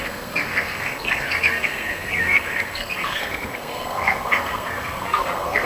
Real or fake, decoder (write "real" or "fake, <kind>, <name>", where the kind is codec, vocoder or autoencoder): fake, codec, SNAC